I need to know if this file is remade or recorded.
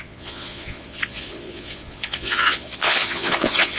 remade